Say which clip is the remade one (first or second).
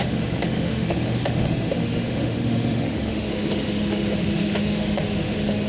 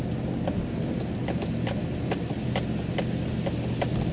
first